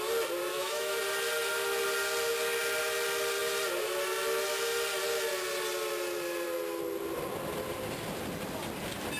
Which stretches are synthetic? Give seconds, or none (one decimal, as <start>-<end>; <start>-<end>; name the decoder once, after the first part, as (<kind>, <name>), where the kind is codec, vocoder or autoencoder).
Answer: 0.5-1.0 (autoencoder, DAC-VAE)